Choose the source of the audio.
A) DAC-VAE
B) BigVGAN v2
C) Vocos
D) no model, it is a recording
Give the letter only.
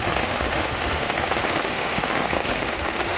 A